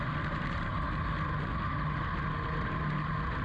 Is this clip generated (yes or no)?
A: no